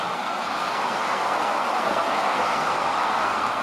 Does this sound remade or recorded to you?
remade